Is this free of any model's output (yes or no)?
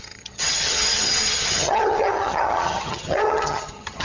no